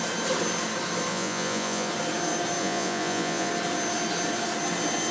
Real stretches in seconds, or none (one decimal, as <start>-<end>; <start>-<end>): 0.0-1.1; 1.9-2.6; 3.5-5.1